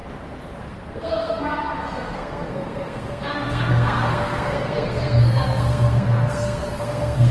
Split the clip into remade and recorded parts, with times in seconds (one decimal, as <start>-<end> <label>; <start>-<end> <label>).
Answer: 0.0-0.6 recorded; 0.6-7.3 remade

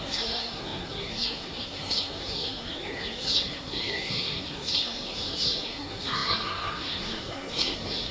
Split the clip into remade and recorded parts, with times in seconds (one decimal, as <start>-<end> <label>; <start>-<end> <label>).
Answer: 0.0-8.1 remade

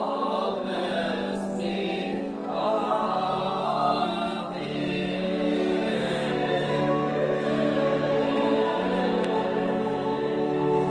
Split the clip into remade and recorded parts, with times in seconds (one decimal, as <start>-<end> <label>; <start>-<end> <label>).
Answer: 0.0-10.9 remade

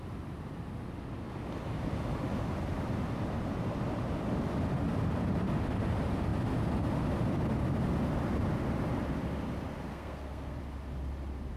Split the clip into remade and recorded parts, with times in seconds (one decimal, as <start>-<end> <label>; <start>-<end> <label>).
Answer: 0.0-9.9 recorded; 9.9-10.6 remade; 10.6-11.6 recorded

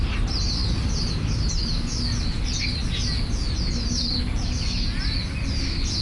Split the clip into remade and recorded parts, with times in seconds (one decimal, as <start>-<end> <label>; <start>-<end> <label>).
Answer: 0.0-6.0 recorded

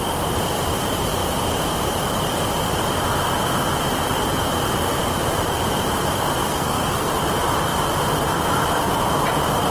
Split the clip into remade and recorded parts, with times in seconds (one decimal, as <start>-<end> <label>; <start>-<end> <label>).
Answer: 0.0-6.4 recorded; 6.4-7.1 remade; 7.1-9.7 recorded

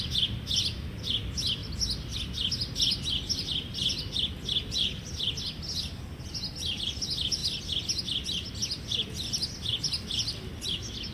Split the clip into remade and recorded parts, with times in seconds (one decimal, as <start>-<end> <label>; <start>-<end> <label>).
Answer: 0.0-11.1 recorded

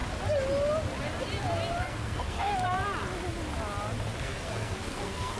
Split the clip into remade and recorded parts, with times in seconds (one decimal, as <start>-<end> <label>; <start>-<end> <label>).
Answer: 0.0-1.8 recorded; 1.8-2.5 remade; 2.5-4.2 recorded; 4.2-5.4 remade